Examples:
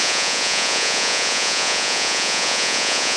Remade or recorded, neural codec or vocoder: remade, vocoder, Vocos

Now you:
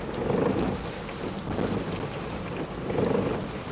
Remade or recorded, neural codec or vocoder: recorded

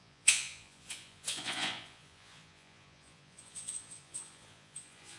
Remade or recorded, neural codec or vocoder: remade, vocoder, Vocos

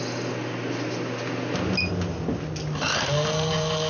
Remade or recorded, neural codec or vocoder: recorded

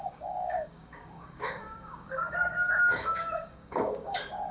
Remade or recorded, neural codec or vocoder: remade, codec, DAC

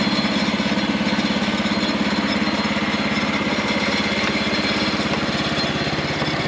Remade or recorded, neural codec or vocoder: recorded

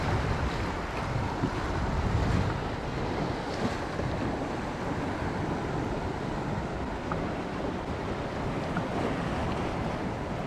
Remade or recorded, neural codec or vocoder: recorded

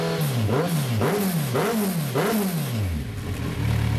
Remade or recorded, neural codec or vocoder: recorded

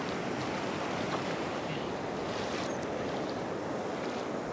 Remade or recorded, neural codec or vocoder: recorded